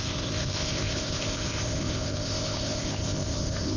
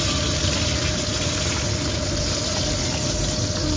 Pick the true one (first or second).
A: second